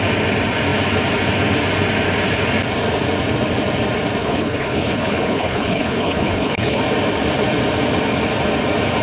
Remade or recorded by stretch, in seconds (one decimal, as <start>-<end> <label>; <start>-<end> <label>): 0.0-4.2 recorded; 4.2-6.8 remade; 6.8-9.0 recorded